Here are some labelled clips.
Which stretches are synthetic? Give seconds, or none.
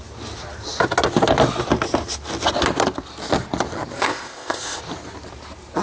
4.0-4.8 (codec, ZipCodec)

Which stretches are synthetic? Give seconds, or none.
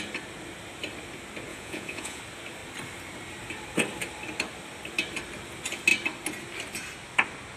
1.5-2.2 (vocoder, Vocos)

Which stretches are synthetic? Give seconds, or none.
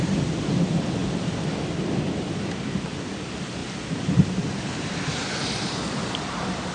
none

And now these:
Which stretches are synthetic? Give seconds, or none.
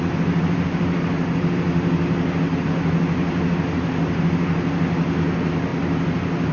none